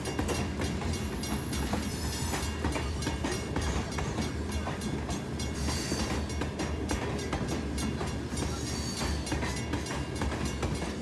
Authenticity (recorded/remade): recorded